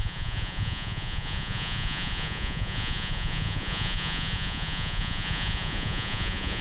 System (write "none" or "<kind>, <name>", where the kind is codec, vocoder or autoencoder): vocoder, Vocos